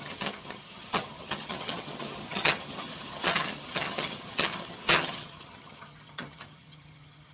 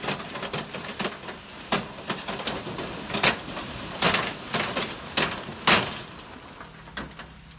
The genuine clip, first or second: second